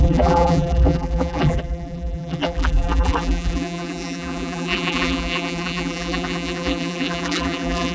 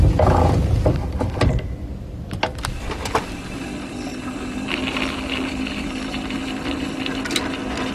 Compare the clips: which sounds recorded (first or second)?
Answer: second